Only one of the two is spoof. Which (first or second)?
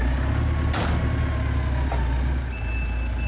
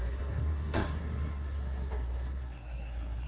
second